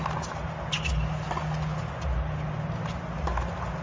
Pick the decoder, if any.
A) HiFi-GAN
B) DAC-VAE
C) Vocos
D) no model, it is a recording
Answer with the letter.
D